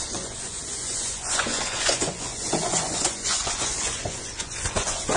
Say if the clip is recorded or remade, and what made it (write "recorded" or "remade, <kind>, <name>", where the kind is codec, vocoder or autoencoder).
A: remade, vocoder, Vocos